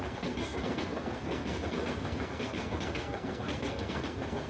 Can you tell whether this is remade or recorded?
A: remade